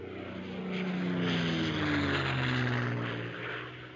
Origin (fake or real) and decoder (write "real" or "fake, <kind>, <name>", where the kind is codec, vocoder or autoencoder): real